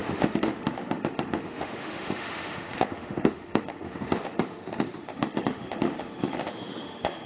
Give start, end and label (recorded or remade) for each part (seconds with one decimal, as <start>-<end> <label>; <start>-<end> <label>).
0.0-7.3 remade

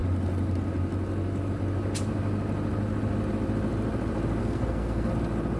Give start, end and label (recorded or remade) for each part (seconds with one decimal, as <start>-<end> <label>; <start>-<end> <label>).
0.0-4.4 recorded; 4.4-5.1 remade; 5.1-5.6 recorded

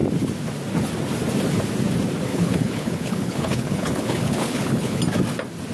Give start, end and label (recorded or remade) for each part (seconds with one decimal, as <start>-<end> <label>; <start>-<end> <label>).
0.0-2.3 recorded; 2.3-5.0 remade; 5.0-5.7 recorded